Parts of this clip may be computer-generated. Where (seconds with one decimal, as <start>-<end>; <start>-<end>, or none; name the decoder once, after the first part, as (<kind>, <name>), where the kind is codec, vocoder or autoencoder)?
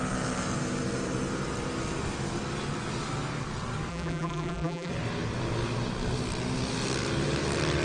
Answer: 3.9-4.9 (vocoder, BigVGAN v2)